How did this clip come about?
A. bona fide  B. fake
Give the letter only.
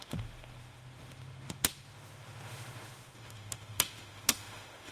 B